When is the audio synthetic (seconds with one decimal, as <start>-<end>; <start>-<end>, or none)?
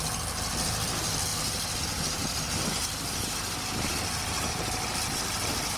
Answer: none